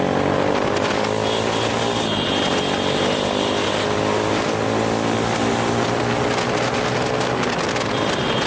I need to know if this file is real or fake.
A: real